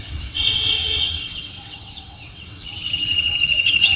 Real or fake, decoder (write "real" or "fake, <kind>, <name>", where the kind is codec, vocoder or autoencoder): fake, vocoder, WaveNeXt